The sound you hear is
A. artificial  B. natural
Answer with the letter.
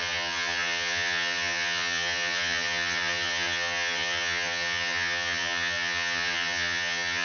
A